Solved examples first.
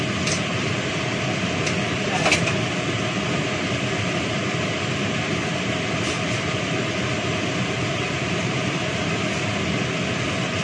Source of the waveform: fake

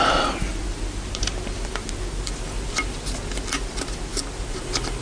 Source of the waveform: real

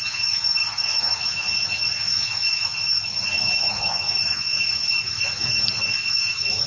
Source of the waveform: fake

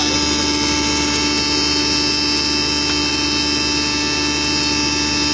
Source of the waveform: real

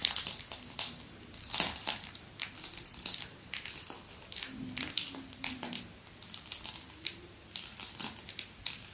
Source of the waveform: real